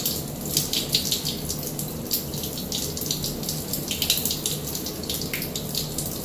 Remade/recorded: recorded